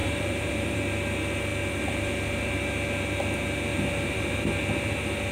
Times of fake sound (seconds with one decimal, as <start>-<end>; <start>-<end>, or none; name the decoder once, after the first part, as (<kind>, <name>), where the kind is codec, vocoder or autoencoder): 0.0-0.8 (vocoder, BigVGAN v2); 3.7-4.5